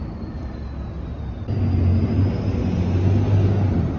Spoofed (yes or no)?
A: no